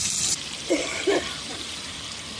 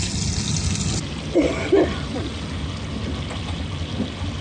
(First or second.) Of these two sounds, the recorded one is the second